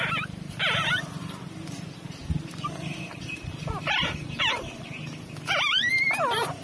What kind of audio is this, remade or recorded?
recorded